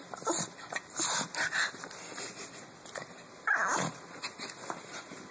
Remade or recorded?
remade